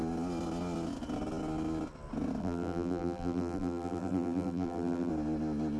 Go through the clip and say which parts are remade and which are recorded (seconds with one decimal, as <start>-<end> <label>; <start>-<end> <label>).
0.0-2.4 recorded; 2.4-5.1 remade; 5.1-5.8 recorded